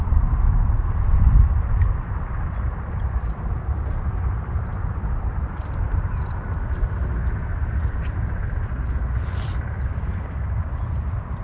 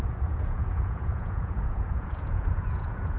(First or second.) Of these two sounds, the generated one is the second